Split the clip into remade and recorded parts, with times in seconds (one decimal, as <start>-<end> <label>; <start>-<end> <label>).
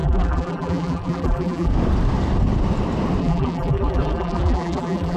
0.0-1.7 remade; 1.7-3.2 recorded; 3.2-5.2 remade